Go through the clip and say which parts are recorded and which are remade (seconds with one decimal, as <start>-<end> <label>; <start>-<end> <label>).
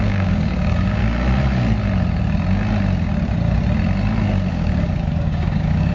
0.0-1.0 remade; 1.0-4.5 recorded; 4.5-5.9 remade